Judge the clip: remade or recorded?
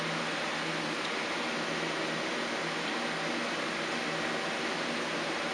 recorded